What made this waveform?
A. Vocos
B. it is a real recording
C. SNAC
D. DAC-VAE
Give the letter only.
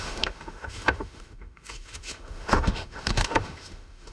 D